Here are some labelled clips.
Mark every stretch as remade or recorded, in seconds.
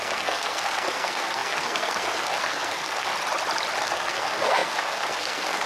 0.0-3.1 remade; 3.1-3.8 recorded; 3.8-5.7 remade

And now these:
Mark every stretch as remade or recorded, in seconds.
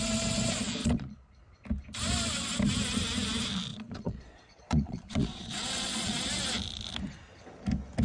0.0-0.8 recorded; 0.8-1.4 remade; 1.4-3.7 recorded; 3.7-6.2 remade; 6.2-8.0 recorded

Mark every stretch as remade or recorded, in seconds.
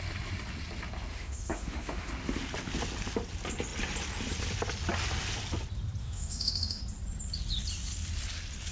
0.0-1.1 recorded; 1.1-2.1 remade; 2.1-6.0 recorded; 6.0-6.8 remade; 6.8-8.7 recorded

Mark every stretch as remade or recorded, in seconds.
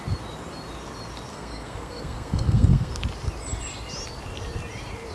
0.0-1.3 recorded; 1.3-2.9 remade; 2.9-5.1 recorded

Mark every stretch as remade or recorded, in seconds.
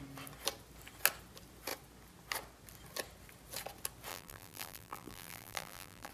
0.0-4.1 recorded; 4.1-6.1 remade